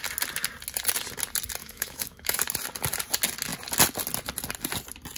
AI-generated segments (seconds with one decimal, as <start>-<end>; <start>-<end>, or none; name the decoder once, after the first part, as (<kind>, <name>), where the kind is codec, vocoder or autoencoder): 1.6-2.4 (autoencoder, DAC-VAE)